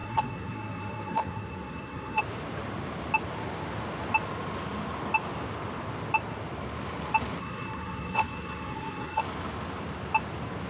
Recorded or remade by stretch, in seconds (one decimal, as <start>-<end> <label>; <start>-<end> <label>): 0.0-2.2 remade; 2.2-7.4 recorded; 7.4-9.2 remade; 9.2-10.7 recorded